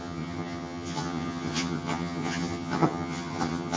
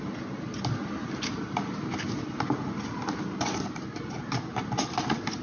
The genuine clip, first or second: second